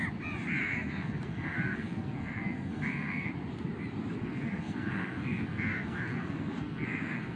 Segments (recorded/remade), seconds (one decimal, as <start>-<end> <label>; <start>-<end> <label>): 0.0-0.6 recorded; 0.6-3.3 remade; 3.3-4.2 recorded; 4.2-7.4 remade